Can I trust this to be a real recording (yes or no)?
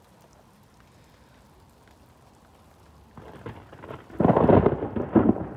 yes